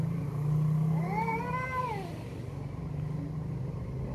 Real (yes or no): yes